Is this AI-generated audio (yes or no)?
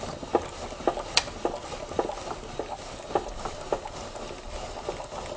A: no